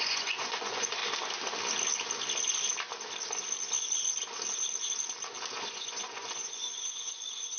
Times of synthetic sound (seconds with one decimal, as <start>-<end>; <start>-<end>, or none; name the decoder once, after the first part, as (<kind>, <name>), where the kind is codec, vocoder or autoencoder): 0.0-1.0 (vocoder, Vocos); 5.6-7.6